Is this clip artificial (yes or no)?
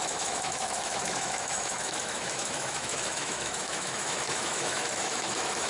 yes